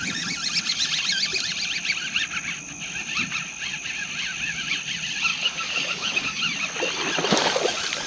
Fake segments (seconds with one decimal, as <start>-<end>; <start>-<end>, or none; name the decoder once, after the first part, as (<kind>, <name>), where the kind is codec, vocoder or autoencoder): 5.3-6.4 (codec, DAC)